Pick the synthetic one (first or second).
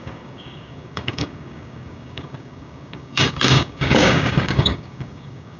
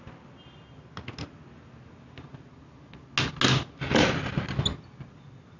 first